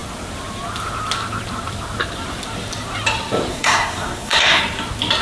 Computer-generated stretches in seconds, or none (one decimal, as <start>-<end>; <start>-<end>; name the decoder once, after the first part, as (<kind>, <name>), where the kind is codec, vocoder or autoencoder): 3.5-4.6 (codec, SNAC)